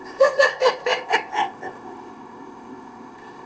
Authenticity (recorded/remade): remade